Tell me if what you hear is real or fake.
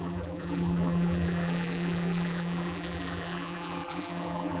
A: fake